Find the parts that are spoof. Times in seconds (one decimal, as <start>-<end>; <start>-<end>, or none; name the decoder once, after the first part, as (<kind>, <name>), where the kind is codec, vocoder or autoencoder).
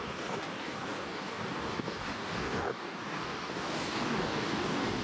0.0-5.0 (codec, DAC)